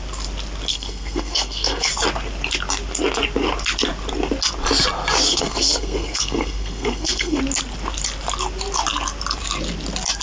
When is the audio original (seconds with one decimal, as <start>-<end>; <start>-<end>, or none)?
0.0-0.7; 1.9-5.3; 7.4-10.2